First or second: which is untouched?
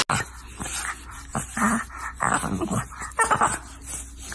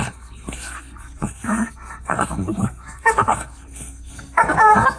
first